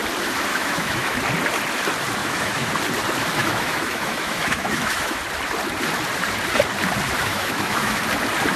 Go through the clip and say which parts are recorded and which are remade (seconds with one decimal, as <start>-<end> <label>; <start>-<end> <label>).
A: 0.0-0.5 recorded; 0.5-1.2 remade; 1.2-2.2 recorded; 2.2-2.7 remade; 2.7-3.4 recorded; 3.4-5.2 remade; 5.2-7.3 recorded; 7.3-8.0 remade; 8.0-8.6 recorded